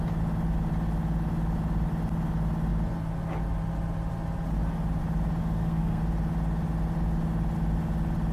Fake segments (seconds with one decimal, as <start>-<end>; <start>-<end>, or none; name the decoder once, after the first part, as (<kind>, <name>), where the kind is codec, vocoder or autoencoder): 5.4-6.0 (codec, SNAC)